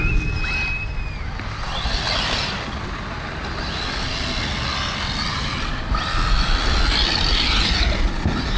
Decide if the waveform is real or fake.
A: real